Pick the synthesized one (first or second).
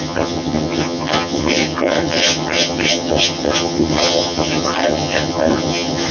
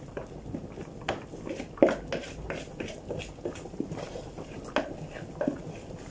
first